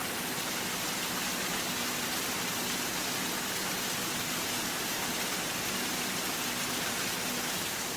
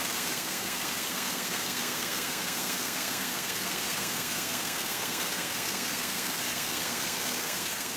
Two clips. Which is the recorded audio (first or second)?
first